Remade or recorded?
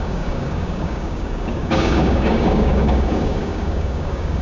remade